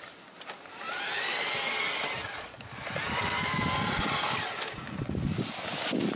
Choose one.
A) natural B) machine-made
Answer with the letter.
A